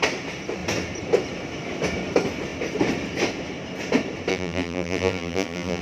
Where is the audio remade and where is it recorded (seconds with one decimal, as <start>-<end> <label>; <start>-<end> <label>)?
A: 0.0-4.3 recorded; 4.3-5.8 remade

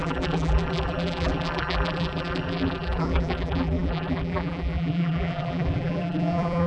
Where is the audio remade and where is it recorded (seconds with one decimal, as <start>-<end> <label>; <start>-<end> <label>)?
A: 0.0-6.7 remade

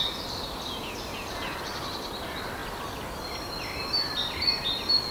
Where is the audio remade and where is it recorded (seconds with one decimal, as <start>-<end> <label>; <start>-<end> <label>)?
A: 0.0-5.1 recorded

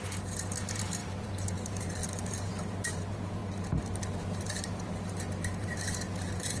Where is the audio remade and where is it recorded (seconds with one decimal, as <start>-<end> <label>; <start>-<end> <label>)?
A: 0.0-3.4 remade; 3.4-4.0 recorded; 4.0-6.6 remade